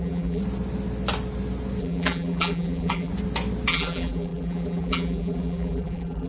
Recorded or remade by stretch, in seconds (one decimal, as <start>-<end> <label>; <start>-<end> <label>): 0.0-0.4 remade; 0.4-1.8 recorded; 1.8-3.1 remade; 3.1-3.7 recorded; 3.7-6.3 remade